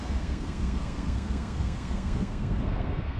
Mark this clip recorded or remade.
remade